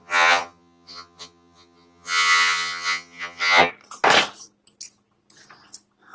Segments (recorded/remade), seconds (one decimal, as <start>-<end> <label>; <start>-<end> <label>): 0.0-3.7 remade; 3.7-6.1 recorded